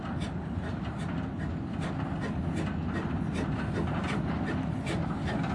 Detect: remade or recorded recorded